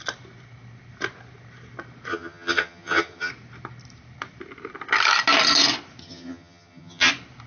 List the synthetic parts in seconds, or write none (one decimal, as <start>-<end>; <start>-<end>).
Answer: 2.1-3.3; 6.0-7.1